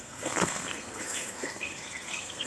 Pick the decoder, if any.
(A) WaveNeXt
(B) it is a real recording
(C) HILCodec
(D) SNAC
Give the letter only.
D